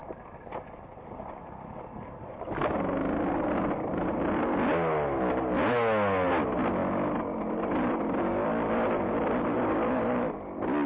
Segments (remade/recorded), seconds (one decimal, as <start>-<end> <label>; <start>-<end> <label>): 0.0-10.9 recorded